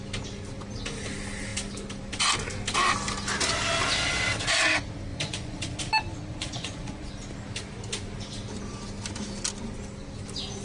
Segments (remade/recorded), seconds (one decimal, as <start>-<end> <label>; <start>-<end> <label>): 0.0-5.1 recorded; 5.1-5.8 remade; 5.8-6.3 recorded; 6.3-7.1 remade; 7.1-10.6 recorded